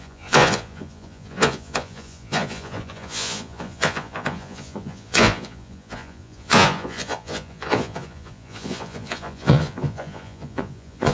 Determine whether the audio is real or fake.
fake